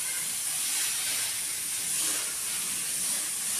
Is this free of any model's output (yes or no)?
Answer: yes